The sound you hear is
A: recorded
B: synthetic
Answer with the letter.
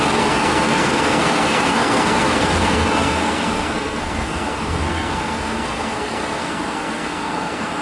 B